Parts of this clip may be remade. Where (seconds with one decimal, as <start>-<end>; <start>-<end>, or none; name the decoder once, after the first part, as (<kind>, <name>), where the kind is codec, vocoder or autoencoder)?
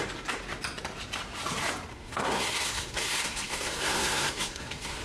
1.9-5.0 (codec, SNAC)